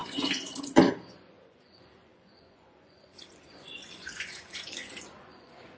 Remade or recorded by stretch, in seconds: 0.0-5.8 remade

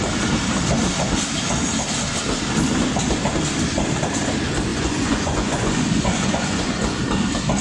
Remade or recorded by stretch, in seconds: 0.0-4.7 recorded; 4.7-6.9 remade; 6.9-7.6 recorded

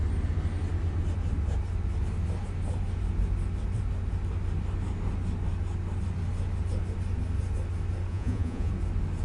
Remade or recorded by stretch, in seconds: 0.0-8.1 recorded; 8.1-8.7 remade; 8.7-9.2 recorded

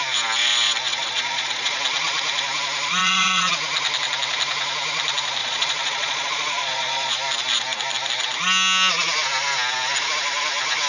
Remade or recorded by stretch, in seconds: 0.0-0.9 recorded; 0.9-1.8 remade; 1.8-3.0 recorded; 3.0-3.5 remade; 3.5-5.4 recorded; 5.4-7.1 remade; 7.1-10.9 recorded

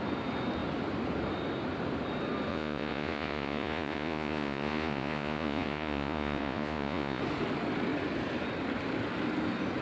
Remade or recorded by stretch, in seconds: 0.0-2.5 recorded; 2.5-7.2 remade; 7.2-9.8 recorded

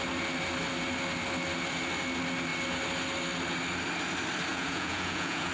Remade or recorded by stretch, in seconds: 0.0-4.5 recorded; 4.5-5.5 remade

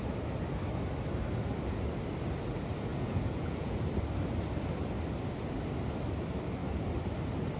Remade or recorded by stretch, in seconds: 0.0-2.9 recorded; 2.9-3.9 remade; 3.9-7.6 recorded

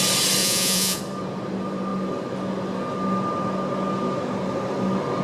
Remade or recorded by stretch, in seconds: 0.0-0.4 recorded; 0.4-1.0 remade; 1.0-5.2 recorded